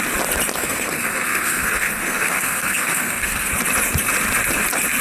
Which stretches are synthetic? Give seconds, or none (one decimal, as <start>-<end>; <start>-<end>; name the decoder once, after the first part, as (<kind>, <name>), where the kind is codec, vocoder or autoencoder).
0.5-3.5 (codec, SNAC)